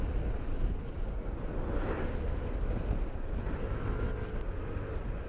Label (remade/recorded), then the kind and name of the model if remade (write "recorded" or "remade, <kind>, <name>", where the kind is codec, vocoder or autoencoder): recorded